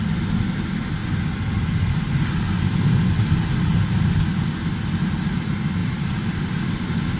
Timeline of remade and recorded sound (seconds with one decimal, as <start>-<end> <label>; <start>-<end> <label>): 0.0-5.8 recorded; 5.8-7.2 remade